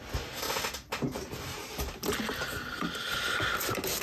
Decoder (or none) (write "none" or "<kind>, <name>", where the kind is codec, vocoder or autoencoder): none